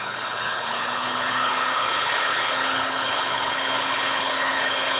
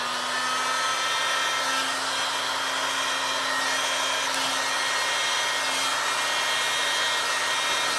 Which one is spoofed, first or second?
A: first